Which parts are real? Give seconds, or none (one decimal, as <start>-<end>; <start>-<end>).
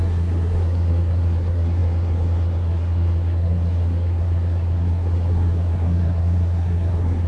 none